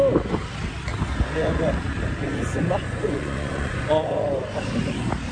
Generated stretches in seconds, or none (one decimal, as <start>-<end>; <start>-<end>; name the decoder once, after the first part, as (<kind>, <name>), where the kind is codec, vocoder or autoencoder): 2.5-4.4 (vocoder, Vocos)